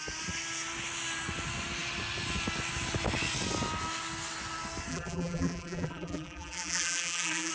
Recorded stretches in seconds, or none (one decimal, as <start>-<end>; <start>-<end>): 0.0-4.9